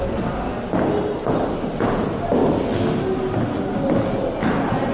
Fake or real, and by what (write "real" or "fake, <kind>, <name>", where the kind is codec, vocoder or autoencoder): real